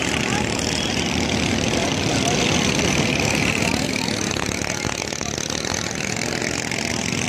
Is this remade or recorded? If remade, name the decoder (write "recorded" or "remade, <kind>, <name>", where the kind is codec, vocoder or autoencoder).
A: recorded